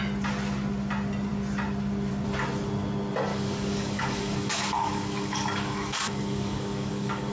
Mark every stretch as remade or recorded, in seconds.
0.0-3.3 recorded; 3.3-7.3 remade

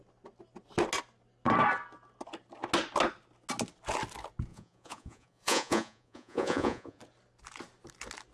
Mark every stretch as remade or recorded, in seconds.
0.0-4.5 recorded; 4.5-7.0 remade; 7.0-8.3 recorded

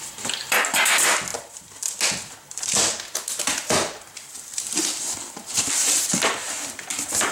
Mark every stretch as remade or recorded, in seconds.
0.0-7.3 recorded

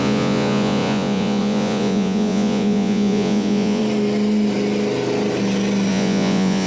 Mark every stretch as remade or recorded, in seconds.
0.0-3.8 remade; 3.8-5.9 recorded; 5.9-6.7 remade

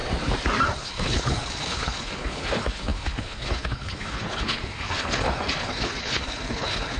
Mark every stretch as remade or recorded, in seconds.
0.0-0.8 recorded; 0.8-7.0 remade

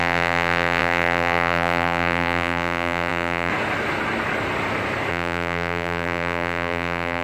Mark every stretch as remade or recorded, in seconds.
0.0-3.5 remade; 3.5-5.1 recorded; 5.1-7.2 remade

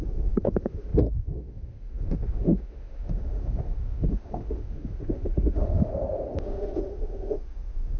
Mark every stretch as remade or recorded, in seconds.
0.0-5.9 remade; 5.9-6.4 recorded; 6.4-8.0 remade

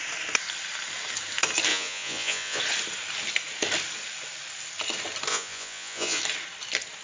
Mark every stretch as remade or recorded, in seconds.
0.0-1.7 recorded; 1.7-2.6 remade; 2.6-5.3 recorded; 5.3-6.2 remade; 6.2-7.0 recorded